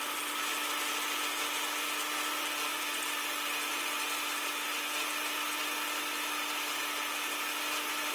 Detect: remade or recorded recorded